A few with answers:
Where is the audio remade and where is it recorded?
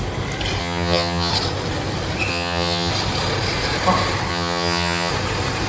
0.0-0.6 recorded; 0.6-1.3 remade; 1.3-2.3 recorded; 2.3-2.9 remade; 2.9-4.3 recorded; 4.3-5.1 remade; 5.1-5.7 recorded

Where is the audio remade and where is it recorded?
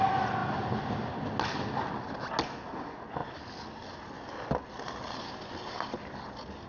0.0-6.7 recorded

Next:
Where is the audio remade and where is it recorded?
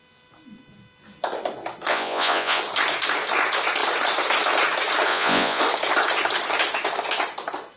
0.0-1.9 recorded; 1.9-2.6 remade; 2.6-5.1 recorded; 5.1-5.6 remade; 5.6-7.8 recorded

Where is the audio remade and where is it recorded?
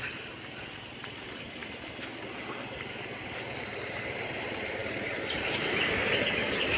0.0-1.6 remade; 1.6-2.9 recorded; 2.9-4.8 remade; 4.8-5.3 recorded; 5.3-6.8 remade